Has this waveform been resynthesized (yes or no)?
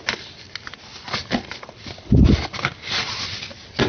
no